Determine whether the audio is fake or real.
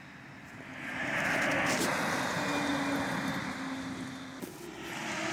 real